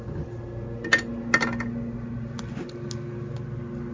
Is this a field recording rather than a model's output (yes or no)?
yes